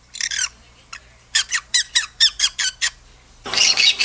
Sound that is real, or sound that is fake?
fake